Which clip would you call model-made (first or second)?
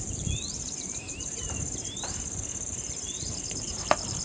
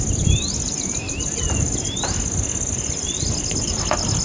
first